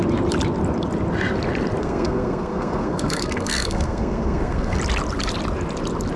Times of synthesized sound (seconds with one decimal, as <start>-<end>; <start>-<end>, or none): 1.8-4.8